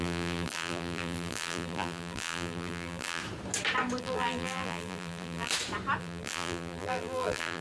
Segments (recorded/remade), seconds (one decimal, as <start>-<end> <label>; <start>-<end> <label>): 0.0-3.2 remade; 3.2-4.0 recorded; 4.0-5.5 remade; 5.5-6.0 recorded; 6.0-7.6 remade

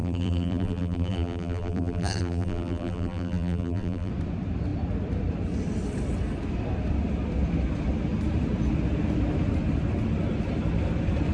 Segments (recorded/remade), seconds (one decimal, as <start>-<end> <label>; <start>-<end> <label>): 0.0-4.1 remade; 4.1-11.3 recorded

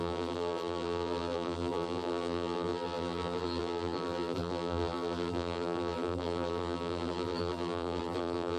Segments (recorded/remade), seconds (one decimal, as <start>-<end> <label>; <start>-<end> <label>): 0.0-8.6 remade